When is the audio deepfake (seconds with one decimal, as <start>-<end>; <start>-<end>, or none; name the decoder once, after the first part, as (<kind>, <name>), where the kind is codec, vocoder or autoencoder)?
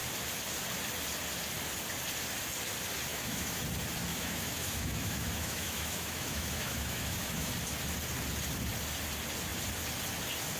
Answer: 3.1-3.6 (autoencoder, DAC-VAE); 4.1-7.5